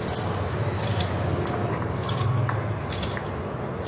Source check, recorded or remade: recorded